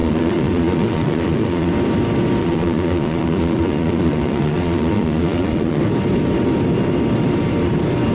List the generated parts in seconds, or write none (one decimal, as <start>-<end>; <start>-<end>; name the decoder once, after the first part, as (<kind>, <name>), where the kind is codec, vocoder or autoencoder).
0.0-1.7 (vocoder, Vocos); 2.4-5.8